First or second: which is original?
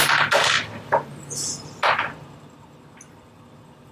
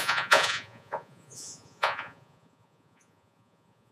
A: first